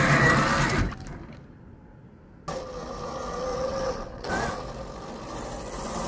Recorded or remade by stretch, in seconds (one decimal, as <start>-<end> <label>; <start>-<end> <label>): 0.0-3.5 recorded; 3.5-4.3 remade; 4.3-6.1 recorded